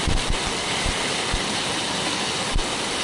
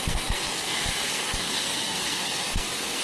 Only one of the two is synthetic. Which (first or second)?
second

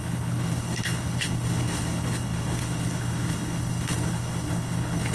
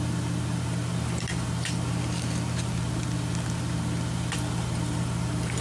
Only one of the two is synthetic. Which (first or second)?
first